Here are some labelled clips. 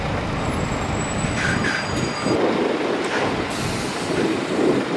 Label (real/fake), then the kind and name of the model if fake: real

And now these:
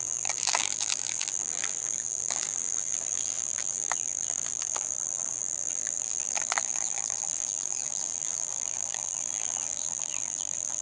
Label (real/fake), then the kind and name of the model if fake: fake, vocoder, BigVGAN v2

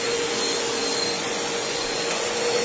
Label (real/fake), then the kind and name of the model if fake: fake, vocoder, Vocos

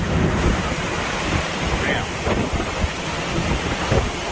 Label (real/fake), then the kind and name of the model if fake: real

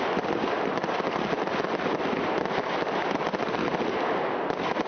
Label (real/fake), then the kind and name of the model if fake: real